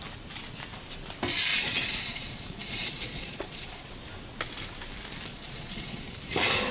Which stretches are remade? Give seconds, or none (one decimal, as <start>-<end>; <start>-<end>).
1.5-3.9; 5.3-6.0